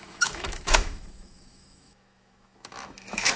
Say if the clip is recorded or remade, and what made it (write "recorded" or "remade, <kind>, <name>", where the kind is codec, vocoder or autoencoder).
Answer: remade, autoencoder, DAC-VAE